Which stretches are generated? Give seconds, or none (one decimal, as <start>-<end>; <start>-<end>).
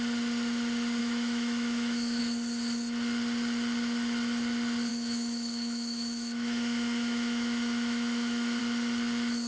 1.0-2.2; 4.9-8.6